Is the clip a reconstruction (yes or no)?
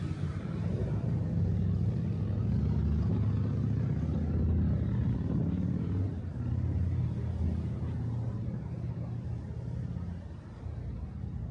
no